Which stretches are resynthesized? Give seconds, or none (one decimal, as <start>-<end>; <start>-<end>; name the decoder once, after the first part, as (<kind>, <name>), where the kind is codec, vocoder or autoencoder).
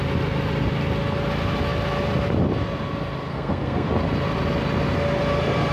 3.3-3.9 (codec, SNAC)